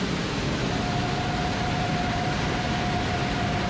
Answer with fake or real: real